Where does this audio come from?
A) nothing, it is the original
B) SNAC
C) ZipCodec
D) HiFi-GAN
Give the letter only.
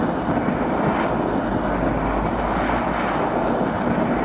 A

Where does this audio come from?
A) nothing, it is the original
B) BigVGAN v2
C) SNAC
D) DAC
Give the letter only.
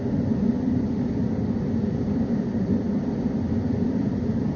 B